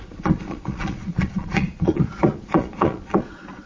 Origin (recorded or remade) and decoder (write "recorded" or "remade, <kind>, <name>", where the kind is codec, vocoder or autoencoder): remade, vocoder, Vocos